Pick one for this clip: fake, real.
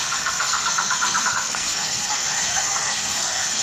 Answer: fake